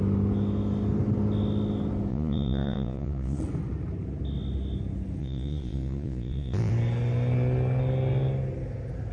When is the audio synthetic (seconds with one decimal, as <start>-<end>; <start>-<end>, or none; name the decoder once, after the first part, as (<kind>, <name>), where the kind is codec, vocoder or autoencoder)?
2.1-3.4 (vocoder, Vocos); 5.2-6.7